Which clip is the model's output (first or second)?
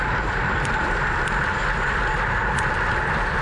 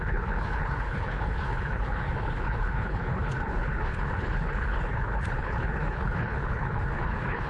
second